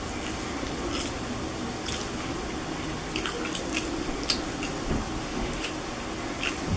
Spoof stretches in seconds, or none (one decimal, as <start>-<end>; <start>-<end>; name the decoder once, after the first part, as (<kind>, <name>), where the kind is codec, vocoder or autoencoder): 5.2-5.7 (autoencoder, DAC-VAE)